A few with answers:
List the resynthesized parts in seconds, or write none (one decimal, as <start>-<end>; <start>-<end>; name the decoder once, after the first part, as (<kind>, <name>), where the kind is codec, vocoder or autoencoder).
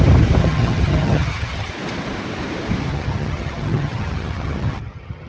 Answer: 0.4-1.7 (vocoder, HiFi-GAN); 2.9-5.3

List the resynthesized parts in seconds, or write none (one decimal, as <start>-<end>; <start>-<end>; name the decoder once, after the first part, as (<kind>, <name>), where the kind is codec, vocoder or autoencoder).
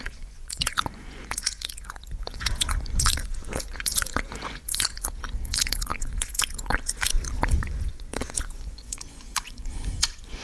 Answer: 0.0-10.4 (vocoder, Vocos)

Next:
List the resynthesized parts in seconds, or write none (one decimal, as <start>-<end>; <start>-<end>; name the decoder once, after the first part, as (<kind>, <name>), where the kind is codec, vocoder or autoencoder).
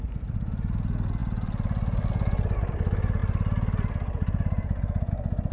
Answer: none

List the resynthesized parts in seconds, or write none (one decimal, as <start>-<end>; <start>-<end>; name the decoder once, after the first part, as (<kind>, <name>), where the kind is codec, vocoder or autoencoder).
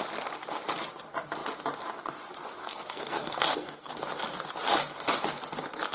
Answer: 2.6-3.9 (codec, SNAC)